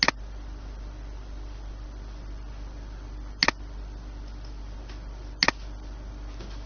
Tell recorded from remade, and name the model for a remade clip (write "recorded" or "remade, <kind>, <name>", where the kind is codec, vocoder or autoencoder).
recorded